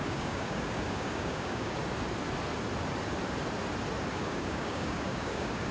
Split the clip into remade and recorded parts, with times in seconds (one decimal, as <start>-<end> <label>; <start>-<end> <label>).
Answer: 0.0-1.8 remade; 1.8-4.1 recorded; 4.1-5.7 remade